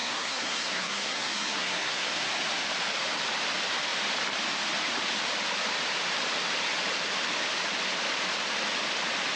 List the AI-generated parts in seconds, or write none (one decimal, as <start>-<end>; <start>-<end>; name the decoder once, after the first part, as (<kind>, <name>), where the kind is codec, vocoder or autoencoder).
0.0-2.1 (codec, SNAC)